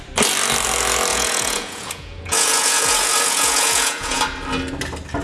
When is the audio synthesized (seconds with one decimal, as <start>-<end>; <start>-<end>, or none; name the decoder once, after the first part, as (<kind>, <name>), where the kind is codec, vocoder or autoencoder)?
1.1-4.2 (vocoder, Vocos)

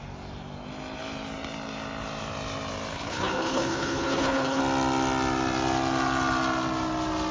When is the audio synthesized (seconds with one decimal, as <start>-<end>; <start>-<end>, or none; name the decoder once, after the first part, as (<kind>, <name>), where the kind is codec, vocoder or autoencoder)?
2.9-4.6 (codec, HILCodec)

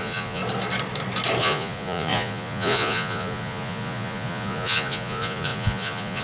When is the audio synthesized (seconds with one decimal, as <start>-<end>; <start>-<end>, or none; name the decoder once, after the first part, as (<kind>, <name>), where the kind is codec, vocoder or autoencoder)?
0.0-0.4 (vocoder, Vocos); 1.4-6.2

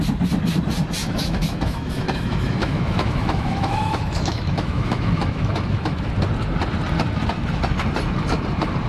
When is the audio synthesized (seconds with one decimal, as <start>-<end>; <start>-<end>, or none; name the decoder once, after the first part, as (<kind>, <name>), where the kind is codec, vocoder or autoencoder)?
1.0-6.1 (autoencoder, DAC-VAE)

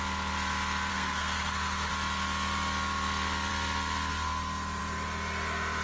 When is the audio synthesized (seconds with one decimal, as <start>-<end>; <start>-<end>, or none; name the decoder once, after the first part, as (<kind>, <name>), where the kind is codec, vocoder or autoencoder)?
0.9-1.9 (codec, SNAC)

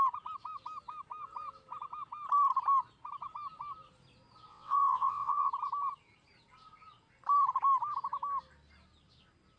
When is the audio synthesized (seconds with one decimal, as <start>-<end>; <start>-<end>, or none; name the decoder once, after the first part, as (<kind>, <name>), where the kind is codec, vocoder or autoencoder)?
4.5-5.5 (vocoder, WaveNeXt)

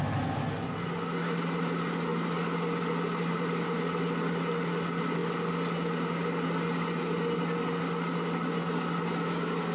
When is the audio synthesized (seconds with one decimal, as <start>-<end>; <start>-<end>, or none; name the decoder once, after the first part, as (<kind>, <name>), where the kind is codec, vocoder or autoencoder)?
none

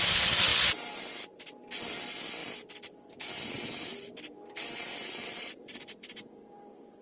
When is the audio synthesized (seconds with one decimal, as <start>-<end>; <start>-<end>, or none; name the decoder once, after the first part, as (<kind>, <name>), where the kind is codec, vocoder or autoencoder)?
5.3-6.6 (vocoder, BigVGAN v2)